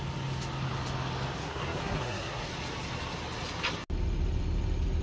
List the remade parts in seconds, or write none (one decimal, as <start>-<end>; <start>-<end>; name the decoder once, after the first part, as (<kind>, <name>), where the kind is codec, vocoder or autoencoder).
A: 1.4-2.4 (codec, SNAC)